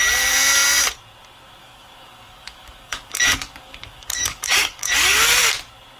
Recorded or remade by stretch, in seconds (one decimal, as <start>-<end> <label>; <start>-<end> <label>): 0.0-1.6 recorded; 1.6-5.2 remade; 5.2-6.0 recorded